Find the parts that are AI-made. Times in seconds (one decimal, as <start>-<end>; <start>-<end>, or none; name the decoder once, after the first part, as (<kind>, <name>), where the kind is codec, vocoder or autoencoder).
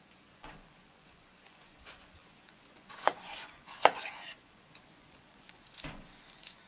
0.0-6.7 (vocoder, Vocos)